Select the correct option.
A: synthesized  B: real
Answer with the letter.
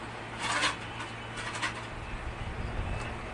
B